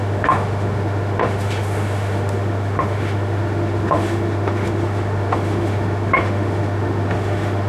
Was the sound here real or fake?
fake